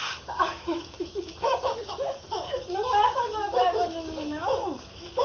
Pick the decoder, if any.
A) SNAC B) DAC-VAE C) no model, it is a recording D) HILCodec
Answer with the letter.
B